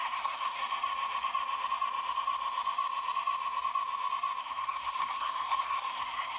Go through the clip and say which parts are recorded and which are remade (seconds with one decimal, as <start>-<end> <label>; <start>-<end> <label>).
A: 0.0-0.6 remade; 0.6-4.4 recorded; 4.4-6.4 remade